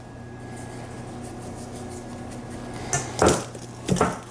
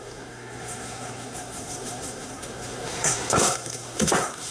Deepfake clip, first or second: second